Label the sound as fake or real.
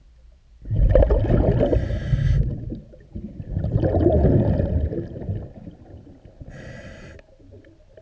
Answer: real